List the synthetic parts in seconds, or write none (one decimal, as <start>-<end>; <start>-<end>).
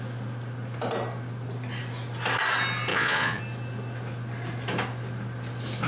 2.9-3.4